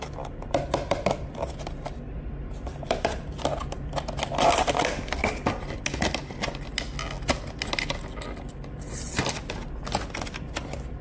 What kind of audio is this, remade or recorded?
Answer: recorded